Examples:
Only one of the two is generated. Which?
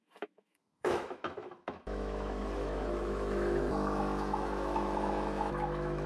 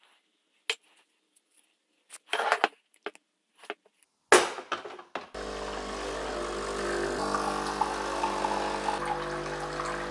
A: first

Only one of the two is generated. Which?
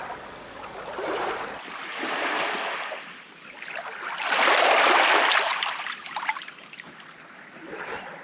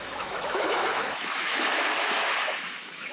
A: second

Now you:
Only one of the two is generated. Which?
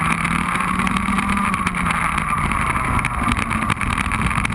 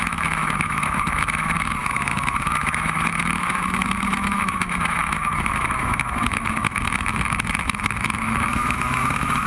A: second